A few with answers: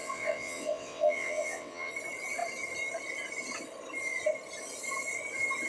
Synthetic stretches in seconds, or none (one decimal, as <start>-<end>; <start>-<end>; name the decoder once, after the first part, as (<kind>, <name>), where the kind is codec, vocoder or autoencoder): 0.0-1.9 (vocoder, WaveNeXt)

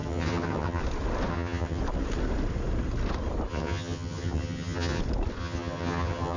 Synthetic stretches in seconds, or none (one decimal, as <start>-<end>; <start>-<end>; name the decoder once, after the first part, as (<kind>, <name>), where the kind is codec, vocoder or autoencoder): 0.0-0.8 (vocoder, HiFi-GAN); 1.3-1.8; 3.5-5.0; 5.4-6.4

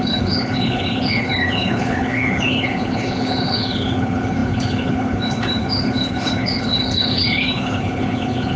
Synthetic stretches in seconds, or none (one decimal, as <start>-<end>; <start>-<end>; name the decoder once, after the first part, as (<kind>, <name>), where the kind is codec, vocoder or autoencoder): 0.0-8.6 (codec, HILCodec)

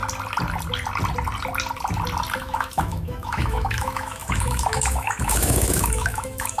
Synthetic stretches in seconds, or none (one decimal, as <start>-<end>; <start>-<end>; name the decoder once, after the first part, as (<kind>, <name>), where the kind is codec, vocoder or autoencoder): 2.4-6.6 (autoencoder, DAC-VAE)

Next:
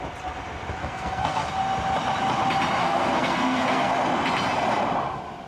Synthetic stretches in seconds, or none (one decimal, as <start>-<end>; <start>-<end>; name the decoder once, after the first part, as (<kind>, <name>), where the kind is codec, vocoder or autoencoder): 0.8-1.5 (codec, SNAC); 2.8-3.9

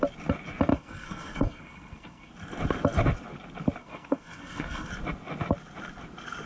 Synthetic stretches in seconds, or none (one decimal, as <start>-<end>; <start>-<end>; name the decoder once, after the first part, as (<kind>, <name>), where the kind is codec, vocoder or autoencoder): 0.7-2.3 (codec, SNAC); 3.8-4.9

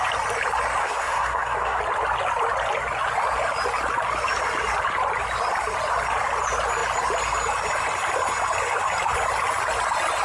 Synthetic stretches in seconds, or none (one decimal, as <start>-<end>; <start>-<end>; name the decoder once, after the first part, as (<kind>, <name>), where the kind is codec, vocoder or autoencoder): 0.8-1.8 (codec, SNAC)